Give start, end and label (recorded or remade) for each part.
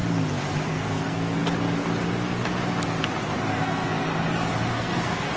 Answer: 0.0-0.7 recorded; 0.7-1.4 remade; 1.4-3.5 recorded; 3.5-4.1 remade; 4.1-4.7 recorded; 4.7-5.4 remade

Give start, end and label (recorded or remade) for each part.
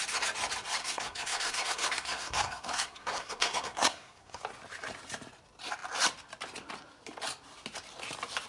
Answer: 0.0-0.8 recorded; 0.8-4.4 remade; 4.4-8.5 recorded